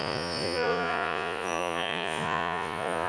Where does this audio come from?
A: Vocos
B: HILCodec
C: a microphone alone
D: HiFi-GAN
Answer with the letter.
A